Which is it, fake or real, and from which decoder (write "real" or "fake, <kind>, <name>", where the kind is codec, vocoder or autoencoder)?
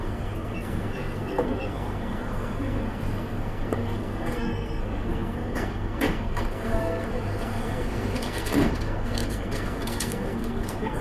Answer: fake, codec, SNAC